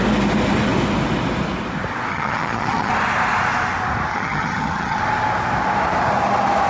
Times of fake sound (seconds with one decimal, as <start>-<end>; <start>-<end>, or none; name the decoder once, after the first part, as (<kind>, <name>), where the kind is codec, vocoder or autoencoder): 2.1-2.9 (vocoder, HiFi-GAN); 4.1-5.0